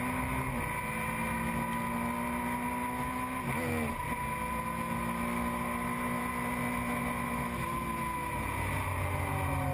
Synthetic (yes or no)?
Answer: no